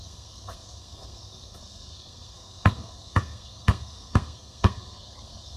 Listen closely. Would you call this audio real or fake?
fake